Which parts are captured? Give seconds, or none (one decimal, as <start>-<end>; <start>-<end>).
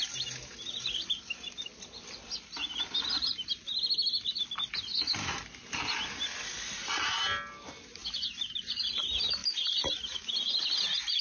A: 0.0-9.4; 10.3-11.2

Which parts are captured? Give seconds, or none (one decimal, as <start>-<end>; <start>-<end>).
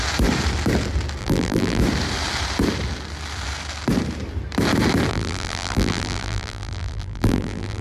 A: 0.0-1.2; 1.8-5.1